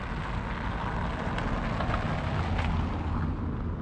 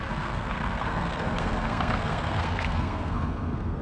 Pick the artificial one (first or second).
second